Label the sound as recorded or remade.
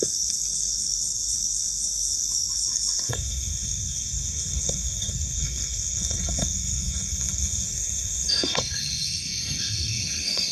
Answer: remade